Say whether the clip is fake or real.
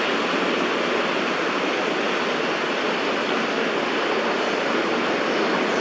real